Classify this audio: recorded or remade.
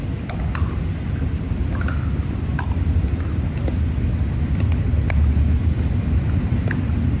recorded